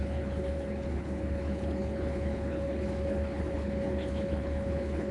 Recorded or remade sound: remade